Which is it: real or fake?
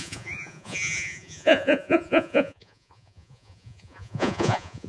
fake